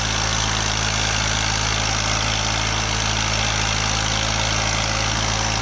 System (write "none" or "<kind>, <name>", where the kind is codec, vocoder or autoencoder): none